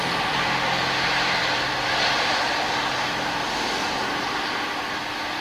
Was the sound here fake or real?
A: real